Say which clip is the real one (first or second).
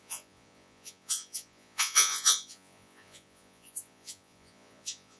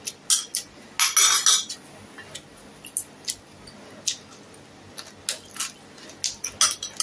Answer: second